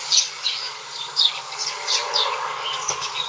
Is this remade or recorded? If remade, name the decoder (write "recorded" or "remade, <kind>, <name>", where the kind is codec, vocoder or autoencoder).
remade, codec, DAC